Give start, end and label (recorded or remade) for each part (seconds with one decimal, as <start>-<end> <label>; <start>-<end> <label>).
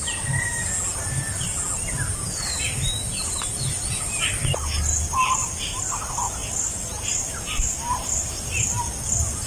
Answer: 0.0-9.5 recorded